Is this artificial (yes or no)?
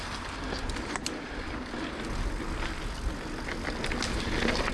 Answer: no